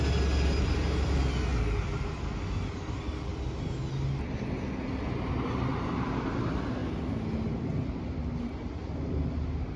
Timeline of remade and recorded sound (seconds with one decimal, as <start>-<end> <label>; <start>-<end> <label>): 0.0-9.8 recorded